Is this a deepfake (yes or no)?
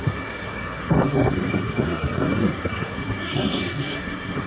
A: yes